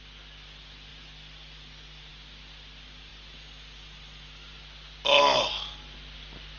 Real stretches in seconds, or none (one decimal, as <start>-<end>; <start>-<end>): 0.0-6.6

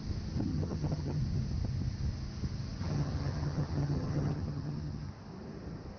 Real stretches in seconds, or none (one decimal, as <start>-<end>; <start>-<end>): 0.0-0.5; 1.2-2.8; 5.1-6.0

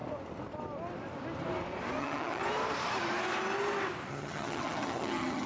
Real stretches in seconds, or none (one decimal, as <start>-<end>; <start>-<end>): 0.0-2.0; 2.4-4.1

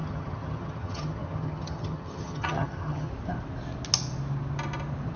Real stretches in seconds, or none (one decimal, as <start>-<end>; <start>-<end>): 3.1-5.2

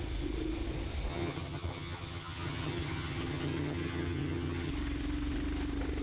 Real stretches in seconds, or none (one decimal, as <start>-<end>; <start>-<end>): 0.0-1.1; 4.7-6.0